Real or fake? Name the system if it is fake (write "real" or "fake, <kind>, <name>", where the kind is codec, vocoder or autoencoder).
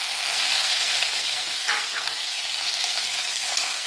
fake, codec, SNAC